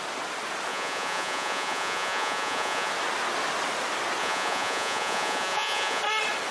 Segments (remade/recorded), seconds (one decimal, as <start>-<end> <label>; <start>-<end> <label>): 0.0-0.7 recorded; 0.7-2.9 remade; 2.9-4.2 recorded; 4.2-6.0 remade; 6.0-6.5 recorded